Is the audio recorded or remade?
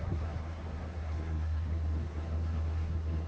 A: remade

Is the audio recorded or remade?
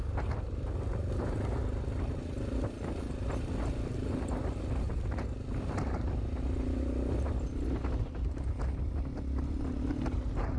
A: recorded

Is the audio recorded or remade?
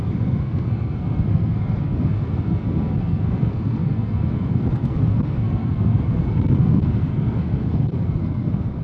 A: remade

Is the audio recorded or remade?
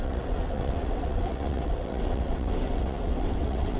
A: remade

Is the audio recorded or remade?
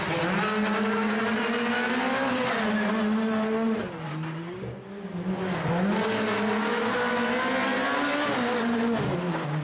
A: recorded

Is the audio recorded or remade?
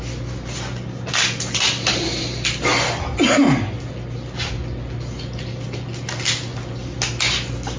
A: recorded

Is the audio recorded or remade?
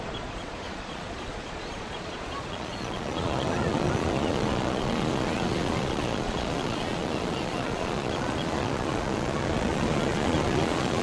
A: remade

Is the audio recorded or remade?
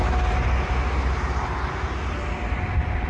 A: recorded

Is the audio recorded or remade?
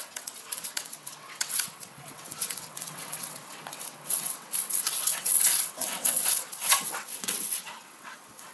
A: remade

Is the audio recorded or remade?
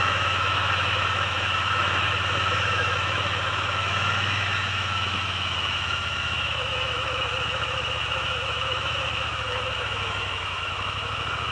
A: remade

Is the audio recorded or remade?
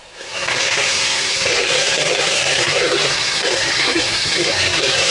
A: remade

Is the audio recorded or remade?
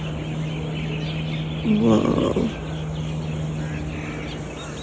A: recorded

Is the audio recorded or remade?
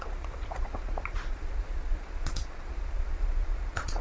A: remade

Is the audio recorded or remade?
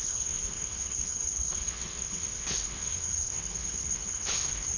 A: remade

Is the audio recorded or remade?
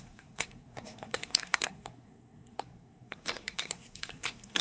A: remade